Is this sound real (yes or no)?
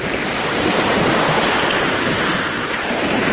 no